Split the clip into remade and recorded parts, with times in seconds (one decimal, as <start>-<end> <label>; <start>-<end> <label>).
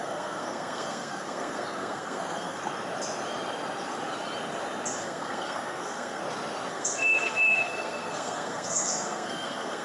0.0-2.6 remade; 2.6-5.0 recorded; 5.0-6.2 remade; 6.2-6.7 recorded; 6.7-9.8 remade